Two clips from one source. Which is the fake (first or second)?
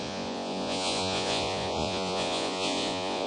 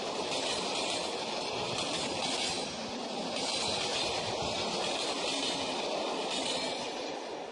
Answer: first